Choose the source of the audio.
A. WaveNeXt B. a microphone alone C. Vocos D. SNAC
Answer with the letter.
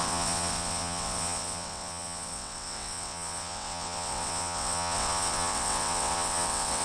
A